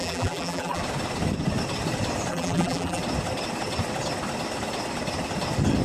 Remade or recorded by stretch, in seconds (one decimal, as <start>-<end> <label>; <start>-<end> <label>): 0.0-0.8 remade; 0.8-2.3 recorded; 2.3-3.0 remade; 3.0-5.8 recorded